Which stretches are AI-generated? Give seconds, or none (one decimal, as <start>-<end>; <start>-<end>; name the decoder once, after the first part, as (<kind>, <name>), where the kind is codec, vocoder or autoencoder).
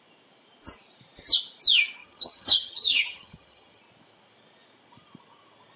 2.0-3.8 (vocoder, HiFi-GAN)